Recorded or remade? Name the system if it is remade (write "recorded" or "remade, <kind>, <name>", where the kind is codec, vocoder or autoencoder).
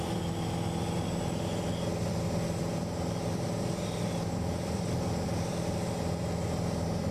recorded